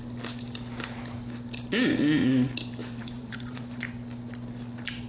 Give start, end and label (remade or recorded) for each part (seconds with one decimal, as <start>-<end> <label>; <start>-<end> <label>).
0.0-2.8 recorded; 2.8-3.8 remade; 3.8-5.1 recorded

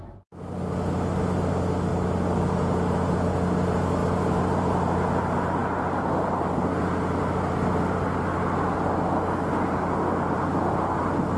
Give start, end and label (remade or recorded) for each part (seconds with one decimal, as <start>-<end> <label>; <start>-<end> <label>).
0.0-11.4 recorded